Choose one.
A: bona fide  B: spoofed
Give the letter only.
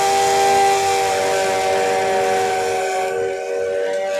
A